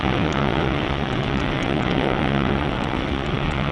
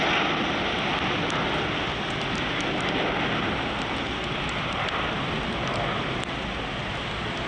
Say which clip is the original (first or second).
second